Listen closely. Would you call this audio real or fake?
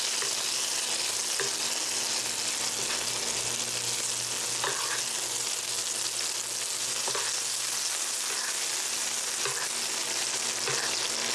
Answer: real